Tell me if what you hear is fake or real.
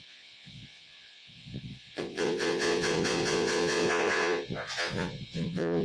fake